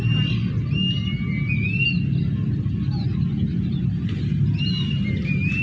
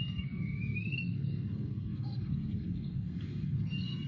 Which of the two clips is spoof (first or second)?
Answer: second